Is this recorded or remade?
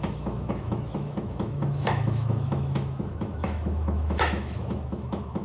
remade